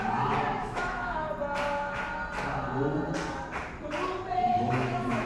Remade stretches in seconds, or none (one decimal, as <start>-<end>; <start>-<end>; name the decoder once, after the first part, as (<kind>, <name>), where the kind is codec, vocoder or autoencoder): 0.6-1.3 (autoencoder, DAC-VAE); 4.5-5.3